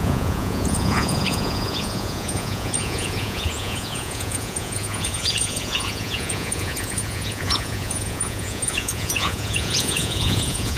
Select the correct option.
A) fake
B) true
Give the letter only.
A